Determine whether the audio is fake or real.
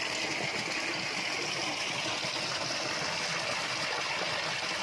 real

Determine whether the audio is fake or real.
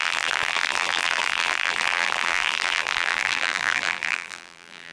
fake